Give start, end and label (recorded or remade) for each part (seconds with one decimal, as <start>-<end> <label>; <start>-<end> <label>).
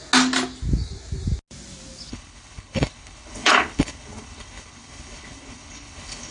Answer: 0.0-2.1 recorded; 2.1-6.3 remade